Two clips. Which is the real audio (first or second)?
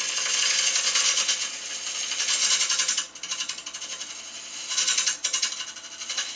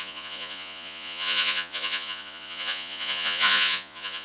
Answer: first